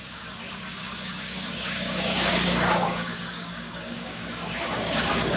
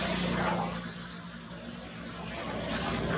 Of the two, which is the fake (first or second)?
first